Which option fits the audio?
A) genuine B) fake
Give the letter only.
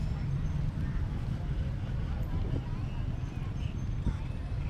A